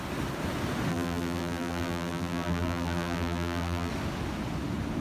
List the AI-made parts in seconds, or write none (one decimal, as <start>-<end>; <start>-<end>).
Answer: 0.9-3.9